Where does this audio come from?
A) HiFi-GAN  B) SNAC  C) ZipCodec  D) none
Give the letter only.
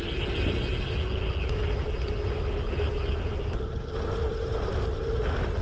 D